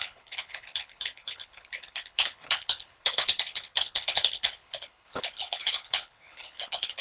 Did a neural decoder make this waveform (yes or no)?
yes